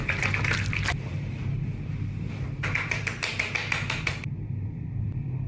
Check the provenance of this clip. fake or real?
fake